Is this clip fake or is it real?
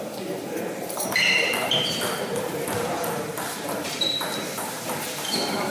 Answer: fake